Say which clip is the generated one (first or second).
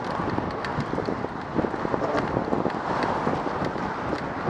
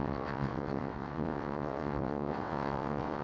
second